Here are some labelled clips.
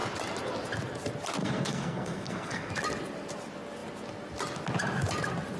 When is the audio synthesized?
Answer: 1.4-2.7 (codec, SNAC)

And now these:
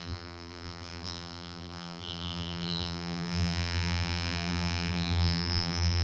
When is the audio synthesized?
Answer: 0.0-6.0 (vocoder, BigVGAN v2)